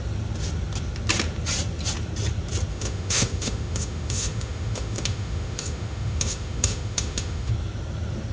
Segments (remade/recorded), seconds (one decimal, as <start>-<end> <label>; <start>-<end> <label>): 0.0-2.7 recorded; 2.7-7.5 remade; 7.5-8.3 recorded